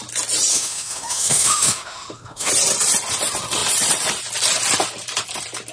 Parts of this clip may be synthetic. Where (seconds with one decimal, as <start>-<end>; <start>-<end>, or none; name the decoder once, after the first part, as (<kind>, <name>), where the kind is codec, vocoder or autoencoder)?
0.5-2.5 (autoencoder, DAC-VAE)